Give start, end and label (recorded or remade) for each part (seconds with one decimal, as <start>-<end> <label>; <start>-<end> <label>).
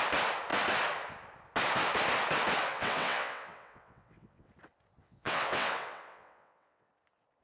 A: 0.0-2.7 recorded; 2.7-4.5 remade; 4.5-5.0 recorded; 5.0-6.9 remade; 6.9-7.4 recorded